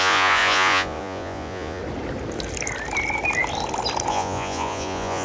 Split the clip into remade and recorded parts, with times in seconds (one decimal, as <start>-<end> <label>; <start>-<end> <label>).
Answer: 0.0-1.8 remade; 1.8-4.1 recorded; 4.1-5.2 remade